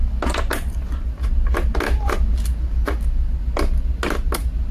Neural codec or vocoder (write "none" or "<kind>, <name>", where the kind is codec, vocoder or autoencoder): none